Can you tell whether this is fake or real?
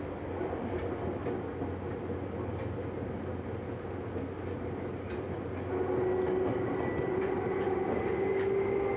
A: real